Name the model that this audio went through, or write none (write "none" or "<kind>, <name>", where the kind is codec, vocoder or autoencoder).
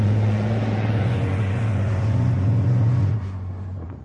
vocoder, Vocos